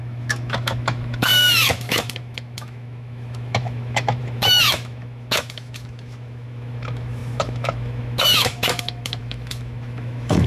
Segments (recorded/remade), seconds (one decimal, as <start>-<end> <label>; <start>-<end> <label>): 0.0-10.5 remade